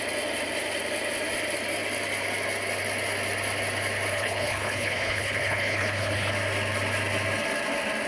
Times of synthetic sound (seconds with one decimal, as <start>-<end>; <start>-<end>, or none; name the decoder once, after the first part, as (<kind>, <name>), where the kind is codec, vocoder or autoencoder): 4.1-6.3 (codec, HILCodec)